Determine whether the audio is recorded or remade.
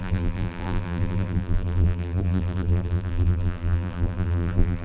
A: remade